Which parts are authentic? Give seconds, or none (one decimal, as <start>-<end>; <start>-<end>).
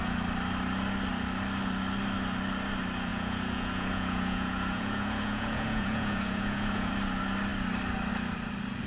0.0-3.1; 6.9-8.9